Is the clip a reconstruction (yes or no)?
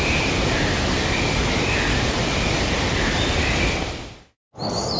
no